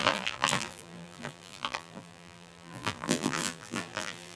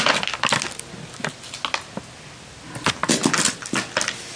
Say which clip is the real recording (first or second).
second